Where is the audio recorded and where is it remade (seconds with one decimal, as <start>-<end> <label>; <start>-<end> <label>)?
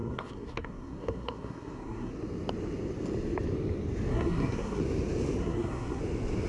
0.0-2.1 remade; 2.1-4.1 recorded; 4.1-4.8 remade; 4.8-5.4 recorded; 5.4-6.0 remade; 6.0-6.5 recorded